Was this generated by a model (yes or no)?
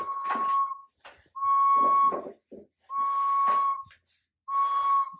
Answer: no